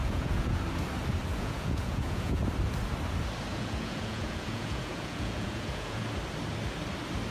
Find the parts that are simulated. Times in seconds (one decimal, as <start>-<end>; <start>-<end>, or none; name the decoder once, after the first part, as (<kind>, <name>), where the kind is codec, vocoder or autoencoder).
0.0-0.6 (vocoder, Vocos); 1.3-2.5; 3.5-6.0